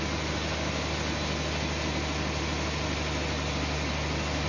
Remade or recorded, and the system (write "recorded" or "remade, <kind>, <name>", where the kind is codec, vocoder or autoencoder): recorded